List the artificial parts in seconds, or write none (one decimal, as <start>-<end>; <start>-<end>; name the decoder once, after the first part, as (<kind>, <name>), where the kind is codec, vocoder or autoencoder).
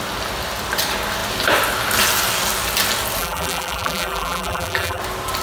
3.2-5.0 (vocoder, BigVGAN v2)